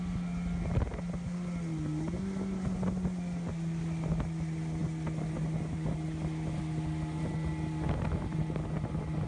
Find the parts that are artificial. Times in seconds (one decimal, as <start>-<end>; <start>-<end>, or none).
none